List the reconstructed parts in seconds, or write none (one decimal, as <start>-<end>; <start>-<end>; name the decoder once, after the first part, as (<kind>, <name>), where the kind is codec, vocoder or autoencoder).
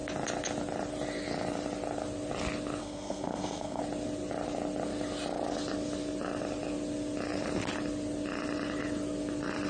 2.8-3.8 (codec, SNAC)